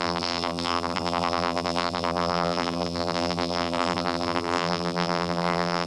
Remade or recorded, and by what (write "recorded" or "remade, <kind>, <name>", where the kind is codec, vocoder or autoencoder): remade, vocoder, BigVGAN v2